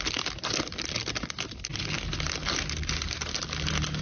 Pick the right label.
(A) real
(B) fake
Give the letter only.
A